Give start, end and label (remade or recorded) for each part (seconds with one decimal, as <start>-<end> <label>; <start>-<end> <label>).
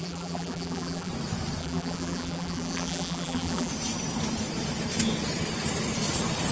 0.0-1.1 remade; 1.1-1.6 recorded; 1.6-3.7 remade; 3.7-6.5 recorded